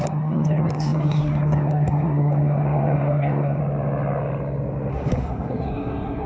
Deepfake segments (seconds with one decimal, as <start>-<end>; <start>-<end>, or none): 0.0-3.6; 4.9-6.3